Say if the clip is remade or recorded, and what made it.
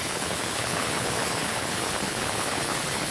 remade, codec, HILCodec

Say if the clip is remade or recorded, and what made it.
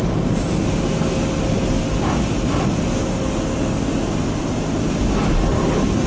recorded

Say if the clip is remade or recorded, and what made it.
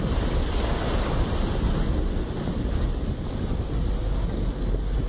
recorded